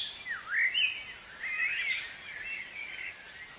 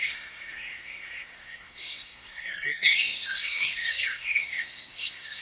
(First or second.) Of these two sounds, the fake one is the second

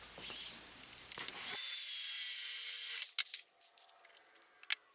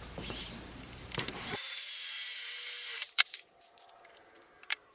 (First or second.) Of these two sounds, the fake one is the second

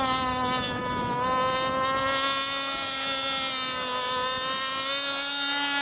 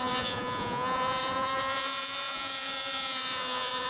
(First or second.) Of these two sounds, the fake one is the second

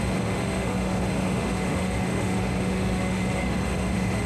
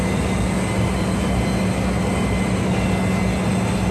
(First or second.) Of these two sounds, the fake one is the first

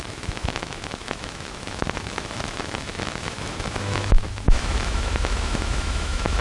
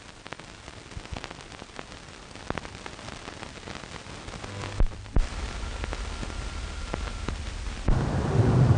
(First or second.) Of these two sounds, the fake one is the first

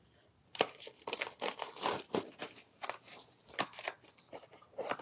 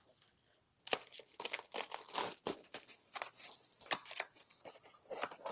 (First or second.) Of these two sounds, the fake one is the first